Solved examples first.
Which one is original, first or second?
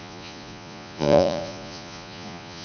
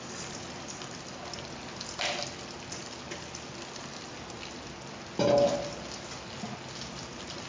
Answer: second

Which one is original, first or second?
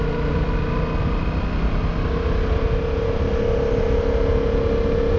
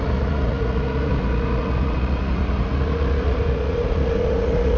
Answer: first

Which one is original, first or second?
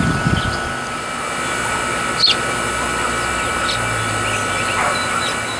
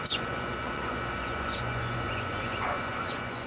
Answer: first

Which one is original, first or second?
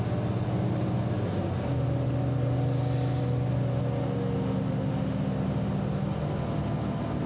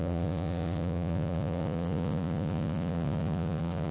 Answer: first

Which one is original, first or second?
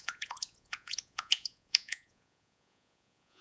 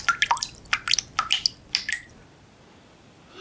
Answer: second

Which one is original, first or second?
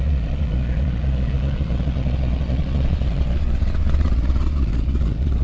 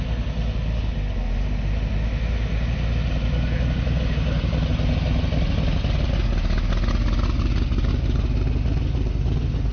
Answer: second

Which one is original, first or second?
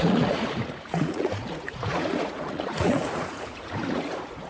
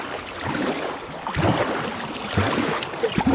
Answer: second